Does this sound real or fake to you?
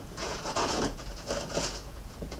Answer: fake